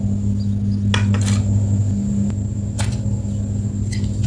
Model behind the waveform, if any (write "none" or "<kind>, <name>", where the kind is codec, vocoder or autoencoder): none